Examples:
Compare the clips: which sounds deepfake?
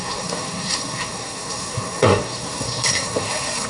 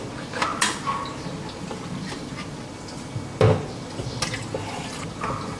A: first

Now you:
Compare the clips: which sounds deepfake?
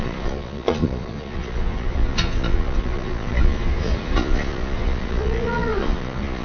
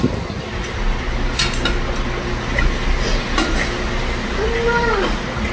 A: first